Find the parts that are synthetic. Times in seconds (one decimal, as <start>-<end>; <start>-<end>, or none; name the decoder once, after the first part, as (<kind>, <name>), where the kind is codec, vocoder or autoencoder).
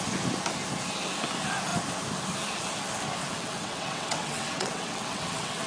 3.2-5.7 (vocoder, WaveNeXt)